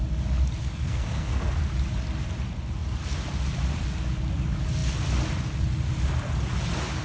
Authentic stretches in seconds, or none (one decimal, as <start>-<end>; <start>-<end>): 0.0-0.6; 1.6-7.0